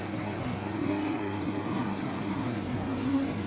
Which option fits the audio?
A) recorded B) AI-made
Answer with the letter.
B